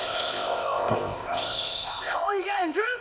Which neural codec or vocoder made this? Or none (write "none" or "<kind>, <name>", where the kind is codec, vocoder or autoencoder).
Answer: codec, ZipCodec